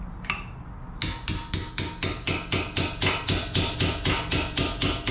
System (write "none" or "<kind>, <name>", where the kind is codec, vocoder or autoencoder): none